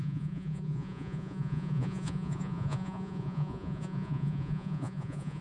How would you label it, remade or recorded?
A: remade